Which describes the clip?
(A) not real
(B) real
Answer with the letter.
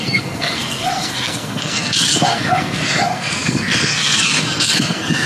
A